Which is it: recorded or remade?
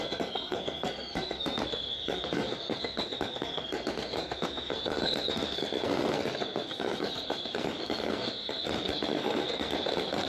remade